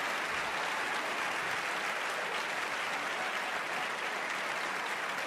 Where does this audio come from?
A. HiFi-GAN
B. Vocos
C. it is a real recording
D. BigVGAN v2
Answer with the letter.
C